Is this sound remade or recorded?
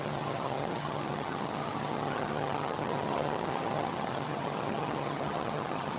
remade